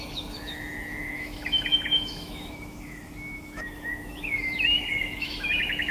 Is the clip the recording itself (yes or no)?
no